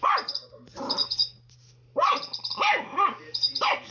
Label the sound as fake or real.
fake